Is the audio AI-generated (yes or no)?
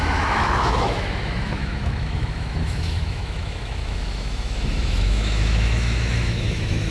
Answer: yes